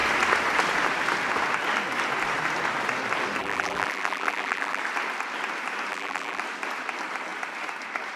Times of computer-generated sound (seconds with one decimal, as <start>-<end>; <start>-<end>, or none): 3.4-4.8; 5.9-6.4